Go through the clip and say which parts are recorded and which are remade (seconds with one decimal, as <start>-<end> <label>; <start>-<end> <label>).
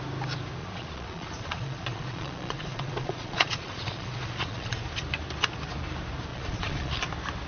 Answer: 0.0-0.6 recorded; 0.6-4.8 remade; 4.8-6.3 recorded; 6.3-6.9 remade; 6.9-7.5 recorded